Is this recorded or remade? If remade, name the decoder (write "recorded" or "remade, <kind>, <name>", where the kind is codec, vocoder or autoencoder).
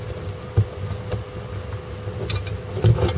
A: recorded